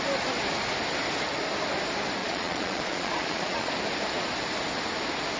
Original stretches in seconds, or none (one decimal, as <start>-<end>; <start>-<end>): 0.0-2.2; 3.7-5.4